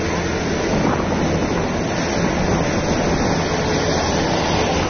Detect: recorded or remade recorded